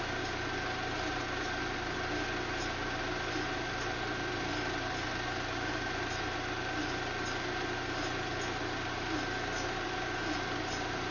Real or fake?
real